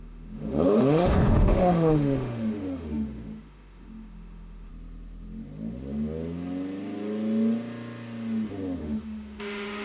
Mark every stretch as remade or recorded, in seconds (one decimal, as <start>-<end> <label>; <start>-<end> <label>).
0.0-4.7 remade; 4.7-8.8 recorded; 8.8-9.8 remade